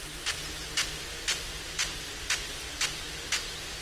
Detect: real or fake real